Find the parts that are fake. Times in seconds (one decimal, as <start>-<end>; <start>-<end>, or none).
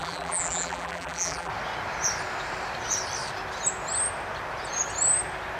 0.0-1.5